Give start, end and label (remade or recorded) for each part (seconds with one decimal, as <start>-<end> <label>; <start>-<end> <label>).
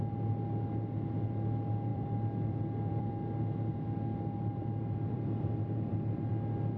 0.0-1.9 recorded; 1.9-3.1 remade; 3.1-4.5 recorded; 4.5-6.3 remade; 6.3-6.8 recorded